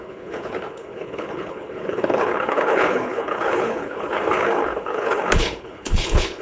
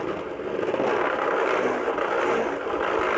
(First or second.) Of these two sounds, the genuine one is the second